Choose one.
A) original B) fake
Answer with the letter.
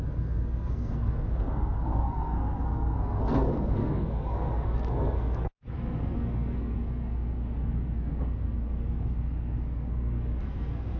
B